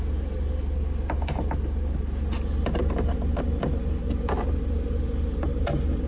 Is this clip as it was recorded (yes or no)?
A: yes